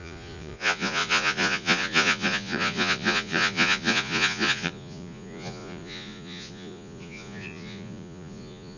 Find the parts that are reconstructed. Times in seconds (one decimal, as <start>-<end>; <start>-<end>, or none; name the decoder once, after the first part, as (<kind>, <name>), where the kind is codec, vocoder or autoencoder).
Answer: 0.0-8.8 (vocoder, Vocos)